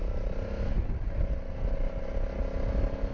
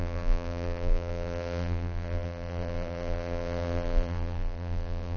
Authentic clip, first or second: first